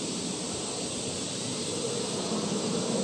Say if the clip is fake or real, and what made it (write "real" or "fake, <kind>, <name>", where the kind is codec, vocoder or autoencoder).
fake, vocoder, BigVGAN v2